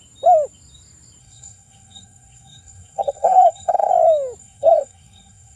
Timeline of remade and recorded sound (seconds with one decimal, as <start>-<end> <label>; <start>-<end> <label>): 0.0-1.2 recorded; 1.2-3.9 remade; 3.9-4.4 recorded; 4.4-5.6 remade